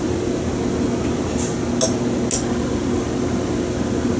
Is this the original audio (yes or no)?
yes